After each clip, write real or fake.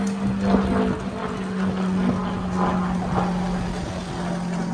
real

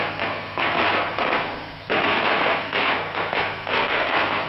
fake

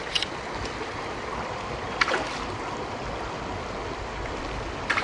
real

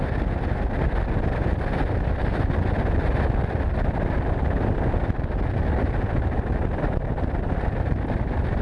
real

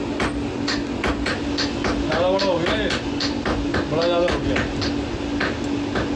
real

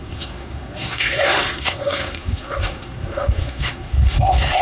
fake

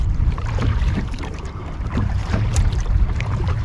fake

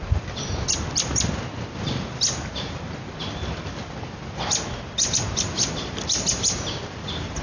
real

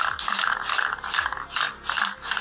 real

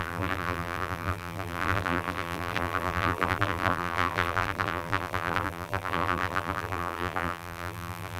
fake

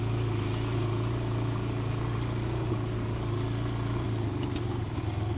real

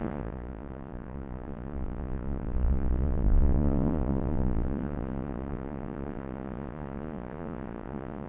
fake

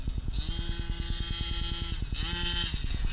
real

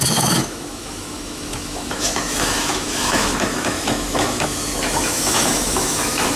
fake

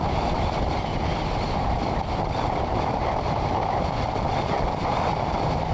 real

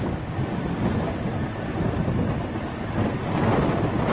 real